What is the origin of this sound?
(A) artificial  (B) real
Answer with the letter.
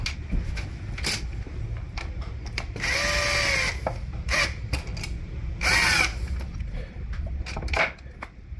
B